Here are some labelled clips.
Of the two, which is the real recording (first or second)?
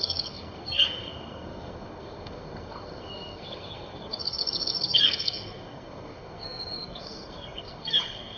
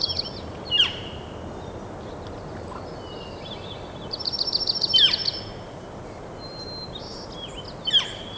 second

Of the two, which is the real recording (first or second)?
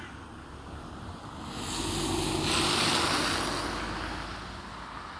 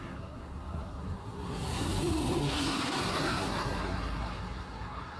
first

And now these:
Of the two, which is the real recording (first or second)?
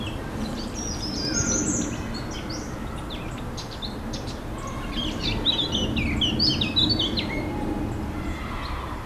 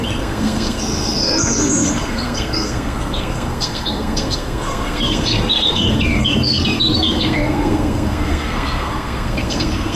first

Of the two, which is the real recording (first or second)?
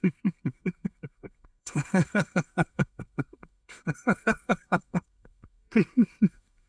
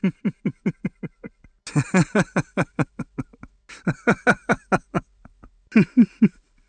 second